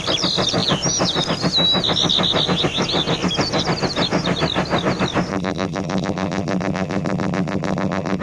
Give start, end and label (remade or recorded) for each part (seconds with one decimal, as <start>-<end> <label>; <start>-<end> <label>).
0.0-5.3 recorded; 5.3-8.2 remade